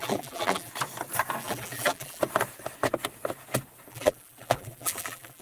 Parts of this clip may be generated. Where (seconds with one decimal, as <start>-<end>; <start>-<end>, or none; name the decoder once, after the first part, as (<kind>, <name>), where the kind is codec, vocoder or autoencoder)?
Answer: 0.0-0.7 (vocoder, BigVGAN v2); 1.4-2.2; 3.9-5.4